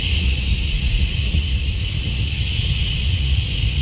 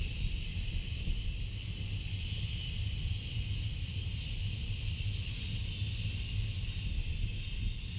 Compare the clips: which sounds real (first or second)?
second